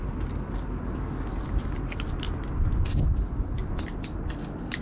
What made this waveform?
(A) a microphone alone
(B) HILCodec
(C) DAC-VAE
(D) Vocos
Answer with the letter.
A